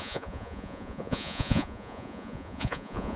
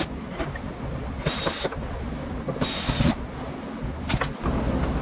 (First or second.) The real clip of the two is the second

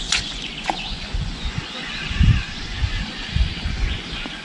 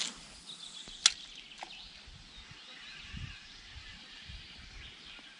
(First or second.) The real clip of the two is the second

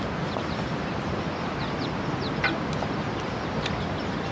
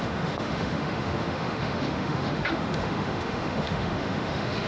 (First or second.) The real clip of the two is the first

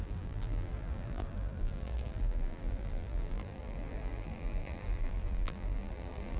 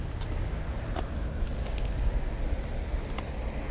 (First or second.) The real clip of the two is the second